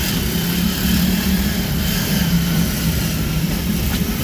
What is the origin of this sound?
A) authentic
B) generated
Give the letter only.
B